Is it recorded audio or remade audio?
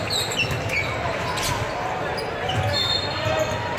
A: recorded